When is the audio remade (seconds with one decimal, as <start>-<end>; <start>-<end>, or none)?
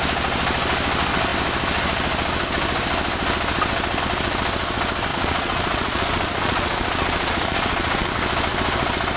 5.1-8.1